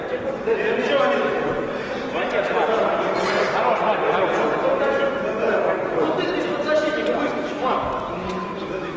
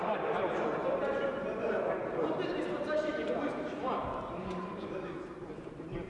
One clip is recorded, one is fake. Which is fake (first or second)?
second